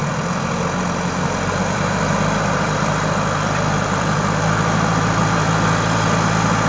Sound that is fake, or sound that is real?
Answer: fake